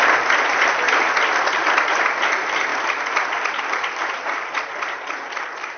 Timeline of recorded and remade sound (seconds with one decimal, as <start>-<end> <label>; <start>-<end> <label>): 0.0-5.8 recorded

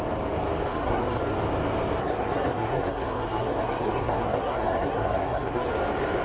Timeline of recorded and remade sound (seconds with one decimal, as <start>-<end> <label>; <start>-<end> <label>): 0.0-0.7 recorded; 0.7-1.2 remade; 1.2-2.0 recorded; 2.0-5.7 remade; 5.7-6.2 recorded

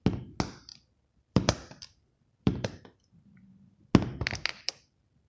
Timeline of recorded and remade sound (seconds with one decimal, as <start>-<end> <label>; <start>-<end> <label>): 0.0-0.7 recorded; 0.7-3.9 remade; 3.9-5.3 recorded